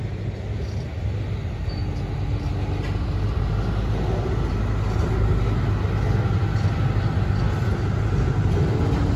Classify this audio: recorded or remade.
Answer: recorded